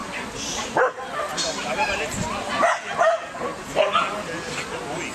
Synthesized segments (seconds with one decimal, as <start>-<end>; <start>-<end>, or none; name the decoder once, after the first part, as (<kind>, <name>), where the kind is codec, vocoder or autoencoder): 1.1-2.3 (vocoder, BigVGAN v2)